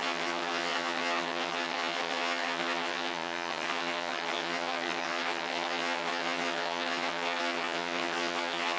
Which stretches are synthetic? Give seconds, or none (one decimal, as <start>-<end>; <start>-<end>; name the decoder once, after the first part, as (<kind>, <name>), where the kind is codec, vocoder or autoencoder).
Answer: 0.0-8.8 (vocoder, HiFi-GAN)

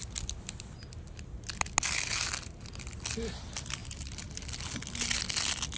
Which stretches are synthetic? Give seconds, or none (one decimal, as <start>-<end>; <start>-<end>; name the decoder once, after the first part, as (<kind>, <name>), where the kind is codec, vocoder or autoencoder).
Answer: none

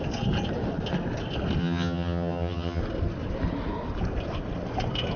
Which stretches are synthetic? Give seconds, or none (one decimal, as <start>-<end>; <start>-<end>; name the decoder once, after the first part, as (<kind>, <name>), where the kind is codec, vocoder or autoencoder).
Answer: 1.6-2.8 (vocoder, HiFi-GAN)

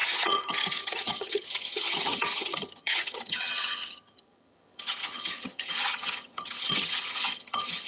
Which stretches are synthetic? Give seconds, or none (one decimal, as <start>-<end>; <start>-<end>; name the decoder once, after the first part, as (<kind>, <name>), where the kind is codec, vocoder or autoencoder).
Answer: 0.0-7.9 (vocoder, HiFi-GAN)

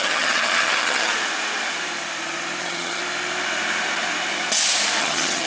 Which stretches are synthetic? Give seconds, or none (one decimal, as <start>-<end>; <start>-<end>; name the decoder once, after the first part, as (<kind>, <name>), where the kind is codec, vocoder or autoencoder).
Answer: 0.0-1.1 (vocoder, HiFi-GAN); 2.6-3.0; 5.0-5.5

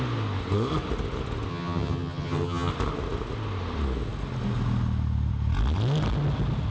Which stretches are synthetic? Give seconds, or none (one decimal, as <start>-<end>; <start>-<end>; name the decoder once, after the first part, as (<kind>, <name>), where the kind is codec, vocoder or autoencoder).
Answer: 1.5-2.7 (vocoder, HiFi-GAN)

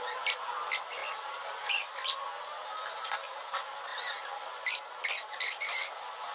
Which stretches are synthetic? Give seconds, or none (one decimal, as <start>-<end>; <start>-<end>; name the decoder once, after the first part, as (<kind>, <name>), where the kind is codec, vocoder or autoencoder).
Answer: none

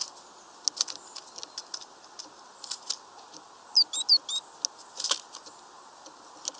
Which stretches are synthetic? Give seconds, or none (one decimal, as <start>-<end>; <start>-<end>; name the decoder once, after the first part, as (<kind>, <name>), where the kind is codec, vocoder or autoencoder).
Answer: none